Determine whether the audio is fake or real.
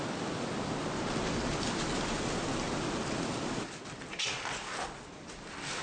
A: real